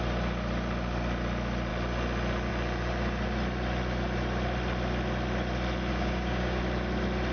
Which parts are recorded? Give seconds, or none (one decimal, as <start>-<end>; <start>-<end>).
0.0-5.9; 6.6-7.3